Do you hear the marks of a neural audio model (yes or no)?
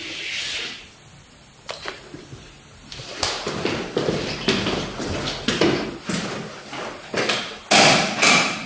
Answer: no